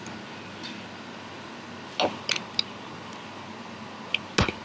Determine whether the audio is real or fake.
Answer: real